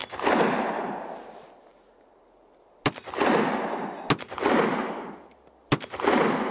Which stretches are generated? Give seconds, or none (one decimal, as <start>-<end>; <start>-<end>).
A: none